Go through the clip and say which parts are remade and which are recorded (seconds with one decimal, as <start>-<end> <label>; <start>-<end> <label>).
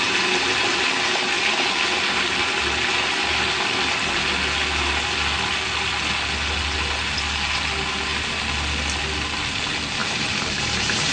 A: 0.0-10.0 recorded; 10.0-11.1 remade